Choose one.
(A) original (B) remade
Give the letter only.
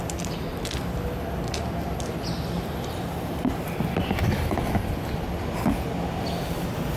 A